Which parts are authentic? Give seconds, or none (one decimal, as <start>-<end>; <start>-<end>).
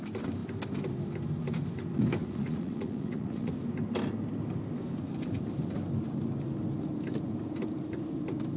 0.0-2.2; 3.5-8.6